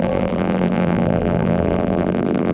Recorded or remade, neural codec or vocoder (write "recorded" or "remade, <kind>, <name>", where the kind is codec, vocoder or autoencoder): remade, vocoder, BigVGAN v2